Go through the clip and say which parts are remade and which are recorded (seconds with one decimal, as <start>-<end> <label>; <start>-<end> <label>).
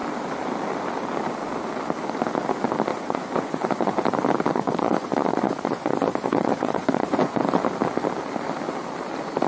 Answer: 0.0-2.9 recorded; 2.9-4.0 remade; 4.0-4.5 recorded; 4.5-7.4 remade; 7.4-9.5 recorded